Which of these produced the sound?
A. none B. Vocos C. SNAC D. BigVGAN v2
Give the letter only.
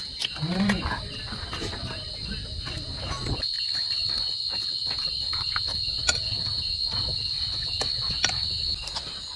A